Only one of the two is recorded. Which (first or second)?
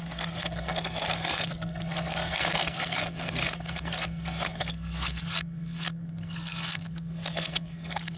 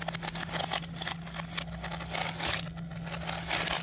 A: second